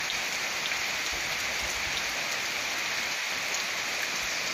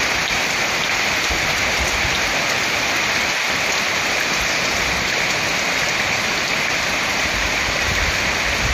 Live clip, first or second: first